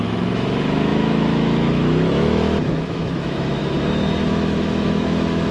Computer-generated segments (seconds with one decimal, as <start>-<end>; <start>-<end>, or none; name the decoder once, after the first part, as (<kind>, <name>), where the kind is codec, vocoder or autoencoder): 0.0-3.6 (autoencoder, DAC-VAE); 4.3-5.5

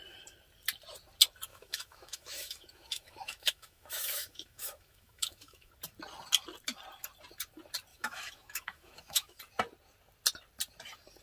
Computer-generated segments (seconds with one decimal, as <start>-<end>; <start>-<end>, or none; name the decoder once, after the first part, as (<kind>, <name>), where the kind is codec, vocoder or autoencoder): 1.5-5.7 (autoencoder, DAC-VAE); 7.9-9.4

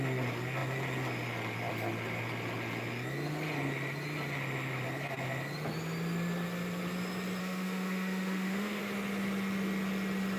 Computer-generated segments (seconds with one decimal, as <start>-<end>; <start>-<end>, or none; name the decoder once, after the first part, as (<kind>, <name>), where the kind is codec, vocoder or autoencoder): 7.4-8.8 (autoencoder, DAC-VAE)